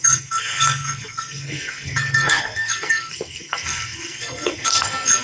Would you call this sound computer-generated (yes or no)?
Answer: yes